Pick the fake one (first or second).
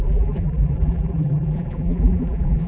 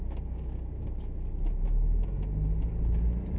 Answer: first